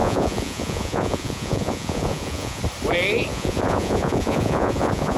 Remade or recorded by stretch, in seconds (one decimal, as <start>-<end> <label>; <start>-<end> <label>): 0.0-2.6 remade; 2.6-3.3 recorded; 3.3-5.2 remade

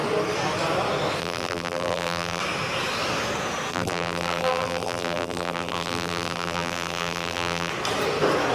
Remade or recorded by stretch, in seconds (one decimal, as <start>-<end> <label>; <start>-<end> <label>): 0.0-1.2 recorded; 1.2-2.4 remade; 2.4-3.7 recorded; 3.7-7.7 remade; 7.7-8.5 recorded

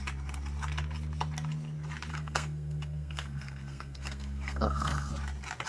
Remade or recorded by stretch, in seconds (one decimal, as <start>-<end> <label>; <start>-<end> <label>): 0.0-2.1 recorded; 2.1-5.1 remade; 5.1-5.7 recorded

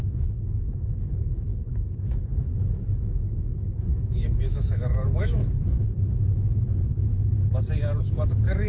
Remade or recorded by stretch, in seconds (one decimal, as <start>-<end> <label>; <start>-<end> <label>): 0.0-5.4 remade; 5.4-8.0 recorded; 8.0-8.7 remade

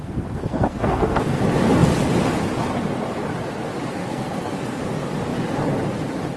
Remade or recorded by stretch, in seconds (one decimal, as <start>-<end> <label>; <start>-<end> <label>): 0.0-1.4 remade; 1.4-4.0 recorded; 4.0-4.8 remade; 4.8-6.4 recorded

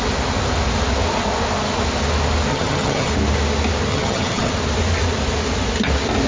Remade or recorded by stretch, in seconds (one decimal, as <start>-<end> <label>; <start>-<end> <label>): 0.0-2.5 recorded; 2.5-3.1 remade; 3.1-3.9 recorded; 3.9-4.5 remade; 4.5-6.3 recorded

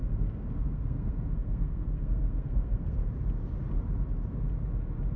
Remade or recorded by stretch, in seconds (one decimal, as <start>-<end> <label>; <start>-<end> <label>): 0.0-3.1 remade; 3.1-5.2 recorded